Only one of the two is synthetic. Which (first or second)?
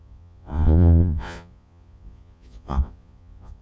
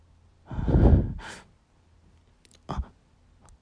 first